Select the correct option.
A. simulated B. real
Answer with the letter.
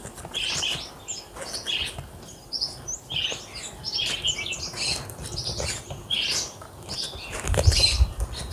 B